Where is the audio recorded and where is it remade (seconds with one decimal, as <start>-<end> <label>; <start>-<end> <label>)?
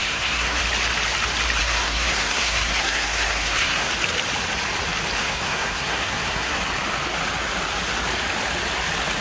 0.0-0.6 remade; 0.6-1.6 recorded; 1.6-3.9 remade; 3.9-5.2 recorded; 5.2-6.6 remade; 6.6-9.2 recorded